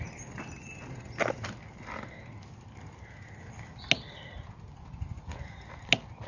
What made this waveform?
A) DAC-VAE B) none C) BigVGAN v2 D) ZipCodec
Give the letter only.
B